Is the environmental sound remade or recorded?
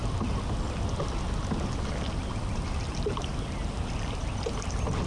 recorded